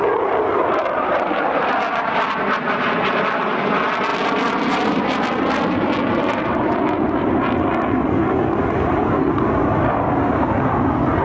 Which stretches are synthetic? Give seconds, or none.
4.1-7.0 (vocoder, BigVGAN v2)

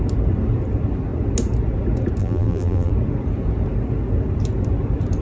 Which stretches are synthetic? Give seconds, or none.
2.2-2.9 (vocoder, BigVGAN v2)

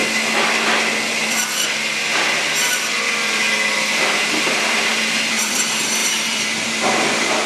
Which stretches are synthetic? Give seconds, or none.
4.9-5.5 (vocoder, BigVGAN v2); 6.0-6.7